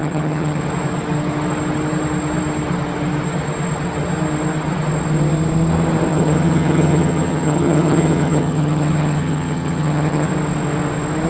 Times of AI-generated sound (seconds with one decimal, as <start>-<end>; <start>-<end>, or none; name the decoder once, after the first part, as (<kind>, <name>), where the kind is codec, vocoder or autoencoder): 0.0-0.6 (vocoder, HiFi-GAN); 6.1-10.3

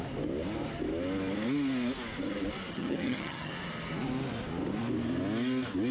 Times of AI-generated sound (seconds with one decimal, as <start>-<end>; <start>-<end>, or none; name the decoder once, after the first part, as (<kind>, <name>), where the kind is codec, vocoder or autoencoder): 2.7-3.5 (vocoder, HiFi-GAN)